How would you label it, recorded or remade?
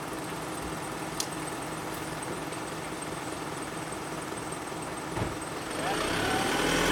recorded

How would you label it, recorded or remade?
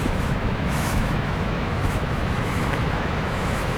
remade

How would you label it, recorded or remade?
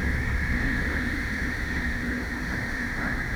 remade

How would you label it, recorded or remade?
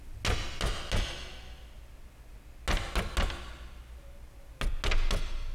recorded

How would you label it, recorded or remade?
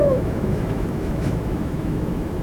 remade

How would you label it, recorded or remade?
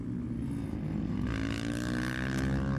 recorded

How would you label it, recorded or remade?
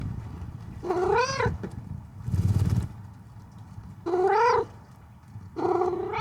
recorded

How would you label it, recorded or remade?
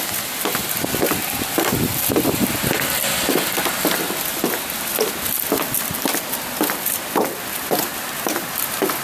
recorded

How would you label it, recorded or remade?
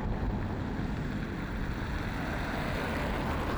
recorded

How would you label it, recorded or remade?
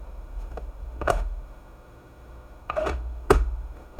remade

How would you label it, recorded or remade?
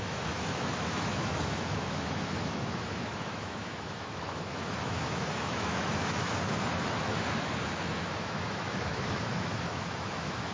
remade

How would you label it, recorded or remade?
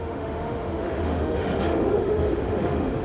remade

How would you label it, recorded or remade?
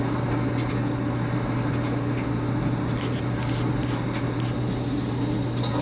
recorded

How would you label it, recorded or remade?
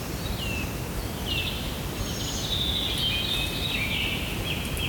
recorded